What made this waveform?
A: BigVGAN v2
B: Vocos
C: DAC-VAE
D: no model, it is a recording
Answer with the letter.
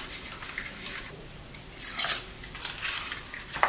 A